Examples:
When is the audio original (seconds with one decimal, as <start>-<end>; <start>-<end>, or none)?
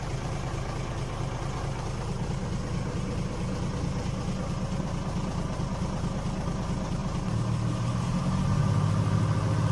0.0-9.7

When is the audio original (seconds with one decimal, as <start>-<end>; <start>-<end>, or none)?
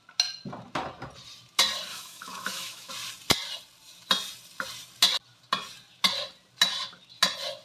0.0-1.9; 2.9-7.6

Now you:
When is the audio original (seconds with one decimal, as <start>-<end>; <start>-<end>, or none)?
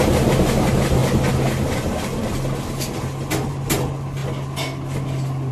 0.0-5.5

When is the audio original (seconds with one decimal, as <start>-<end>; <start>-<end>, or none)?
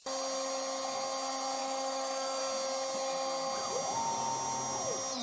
0.0-1.6; 2.4-5.2